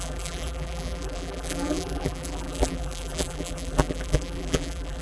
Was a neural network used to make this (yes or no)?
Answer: yes